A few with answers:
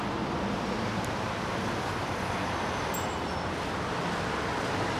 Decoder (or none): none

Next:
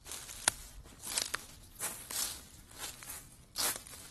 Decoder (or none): none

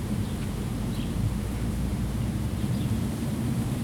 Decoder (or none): vocoder, BigVGAN v2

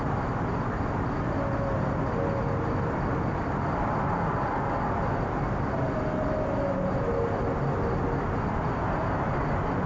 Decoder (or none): none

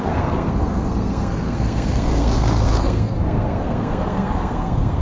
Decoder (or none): codec, SNAC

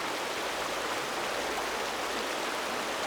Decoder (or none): none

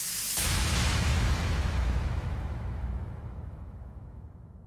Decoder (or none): autoencoder, DAC-VAE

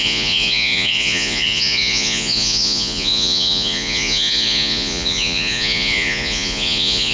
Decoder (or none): vocoder, Vocos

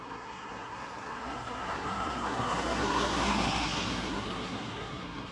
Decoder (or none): codec, SNAC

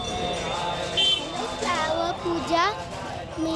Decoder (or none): none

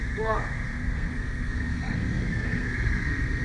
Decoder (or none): codec, SNAC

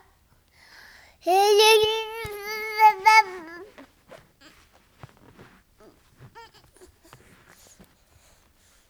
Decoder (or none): none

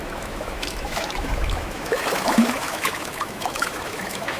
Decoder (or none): autoencoder, DAC-VAE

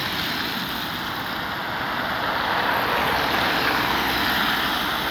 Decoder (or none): none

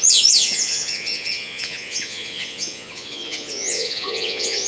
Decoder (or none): vocoder, Vocos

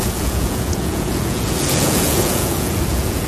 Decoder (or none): vocoder, Vocos